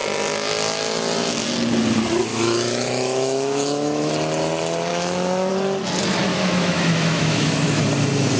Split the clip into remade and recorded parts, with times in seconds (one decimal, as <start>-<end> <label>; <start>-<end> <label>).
0.0-2.3 recorded; 2.3-4.1 remade; 4.1-4.9 recorded; 4.9-5.5 remade; 5.5-6.3 recorded; 6.3-7.8 remade; 7.8-8.4 recorded